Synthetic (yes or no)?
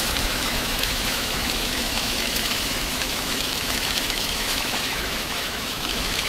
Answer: yes